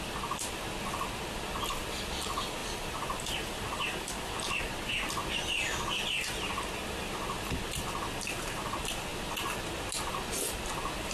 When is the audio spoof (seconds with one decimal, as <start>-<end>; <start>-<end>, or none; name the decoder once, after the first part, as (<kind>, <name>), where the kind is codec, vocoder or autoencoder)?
2.6-4.6 (vocoder, BigVGAN v2)